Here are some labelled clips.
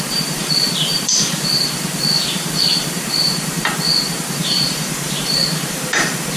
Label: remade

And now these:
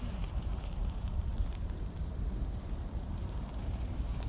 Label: remade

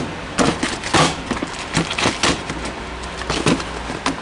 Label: recorded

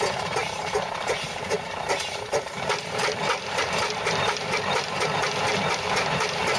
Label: remade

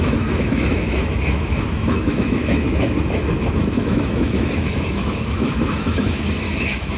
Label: remade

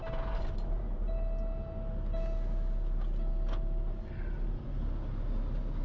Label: recorded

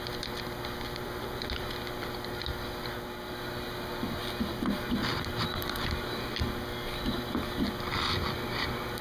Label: recorded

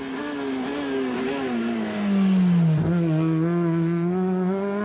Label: recorded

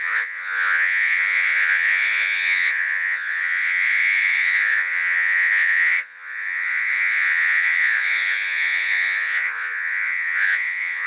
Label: remade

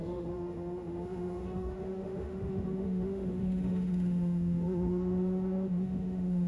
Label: remade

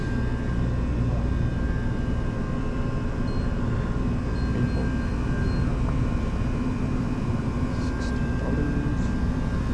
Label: recorded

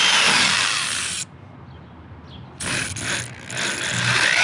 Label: recorded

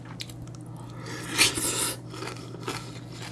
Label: recorded